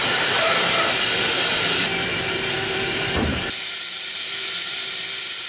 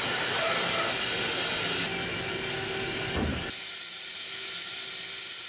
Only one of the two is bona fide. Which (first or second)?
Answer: second